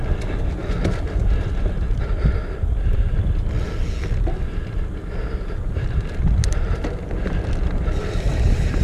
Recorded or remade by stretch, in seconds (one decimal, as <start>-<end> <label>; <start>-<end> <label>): 0.0-8.8 recorded